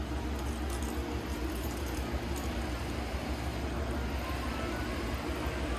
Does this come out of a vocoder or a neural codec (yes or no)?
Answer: no